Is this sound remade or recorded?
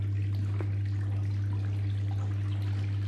recorded